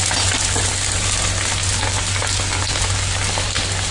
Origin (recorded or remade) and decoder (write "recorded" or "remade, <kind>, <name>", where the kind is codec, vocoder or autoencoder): recorded